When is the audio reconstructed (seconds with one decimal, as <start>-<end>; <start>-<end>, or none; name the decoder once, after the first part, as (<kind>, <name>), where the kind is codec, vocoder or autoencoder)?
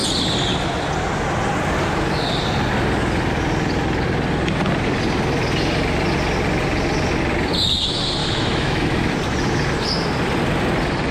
8.2-9.1 (autoencoder, DAC-VAE)